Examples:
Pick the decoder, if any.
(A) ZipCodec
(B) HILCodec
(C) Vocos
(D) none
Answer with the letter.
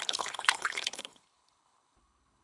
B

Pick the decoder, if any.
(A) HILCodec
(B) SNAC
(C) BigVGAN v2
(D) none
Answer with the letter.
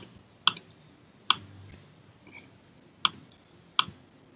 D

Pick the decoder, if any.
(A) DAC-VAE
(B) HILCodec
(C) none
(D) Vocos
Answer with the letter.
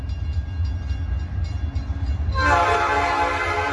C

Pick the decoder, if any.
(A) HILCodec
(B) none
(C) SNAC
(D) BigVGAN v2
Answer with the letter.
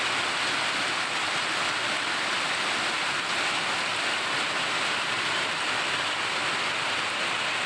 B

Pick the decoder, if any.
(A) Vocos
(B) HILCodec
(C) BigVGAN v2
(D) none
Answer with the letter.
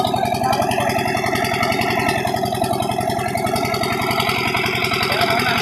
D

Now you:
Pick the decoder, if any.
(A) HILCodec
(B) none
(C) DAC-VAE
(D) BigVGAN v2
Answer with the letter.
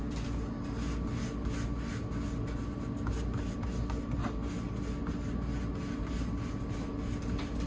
B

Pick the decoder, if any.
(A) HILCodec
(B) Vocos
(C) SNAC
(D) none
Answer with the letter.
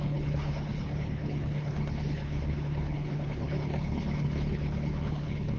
A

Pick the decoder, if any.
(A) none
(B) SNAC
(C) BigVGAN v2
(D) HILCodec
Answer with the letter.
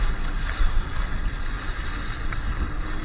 A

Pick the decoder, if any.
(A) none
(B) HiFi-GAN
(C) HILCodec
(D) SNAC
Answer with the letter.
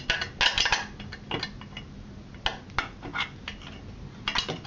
A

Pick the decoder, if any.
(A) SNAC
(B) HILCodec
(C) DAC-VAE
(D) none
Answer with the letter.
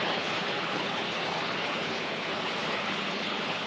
B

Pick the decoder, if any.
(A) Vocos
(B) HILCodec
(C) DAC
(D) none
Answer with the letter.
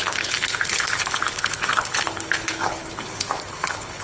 B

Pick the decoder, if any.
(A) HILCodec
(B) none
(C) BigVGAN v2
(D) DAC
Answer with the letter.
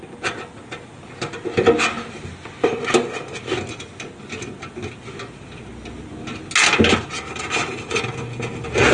B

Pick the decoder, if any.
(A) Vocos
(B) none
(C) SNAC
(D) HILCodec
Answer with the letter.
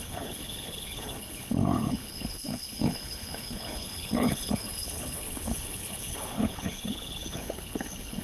D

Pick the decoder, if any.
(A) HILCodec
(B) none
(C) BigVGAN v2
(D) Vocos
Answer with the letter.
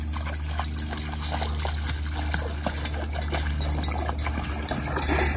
B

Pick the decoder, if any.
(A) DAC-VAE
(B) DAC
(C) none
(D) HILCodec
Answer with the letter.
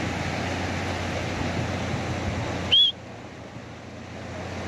C